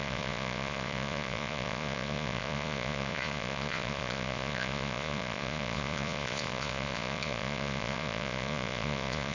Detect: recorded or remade remade